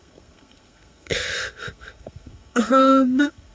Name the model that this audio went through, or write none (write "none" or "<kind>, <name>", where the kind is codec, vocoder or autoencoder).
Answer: codec, SNAC